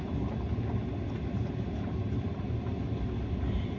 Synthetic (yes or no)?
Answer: no